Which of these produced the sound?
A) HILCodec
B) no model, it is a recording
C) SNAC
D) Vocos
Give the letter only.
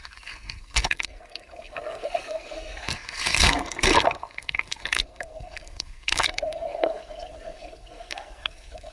C